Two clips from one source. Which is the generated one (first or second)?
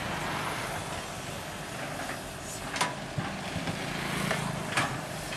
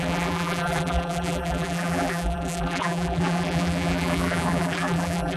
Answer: second